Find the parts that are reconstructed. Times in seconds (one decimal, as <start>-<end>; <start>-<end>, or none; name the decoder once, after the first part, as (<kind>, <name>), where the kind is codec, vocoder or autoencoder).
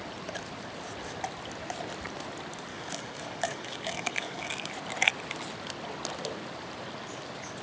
2.7-4.7 (codec, DAC)